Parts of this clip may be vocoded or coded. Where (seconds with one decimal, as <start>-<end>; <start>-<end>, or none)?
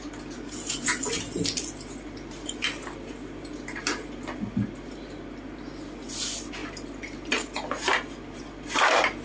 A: none